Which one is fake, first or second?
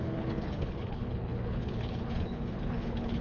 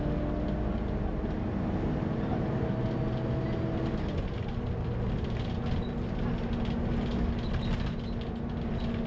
first